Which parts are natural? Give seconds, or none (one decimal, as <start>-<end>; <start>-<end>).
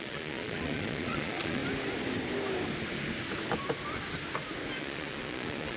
1.6-4.8